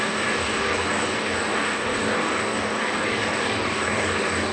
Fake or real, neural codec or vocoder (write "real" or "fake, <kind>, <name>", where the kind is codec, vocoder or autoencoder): fake, codec, DAC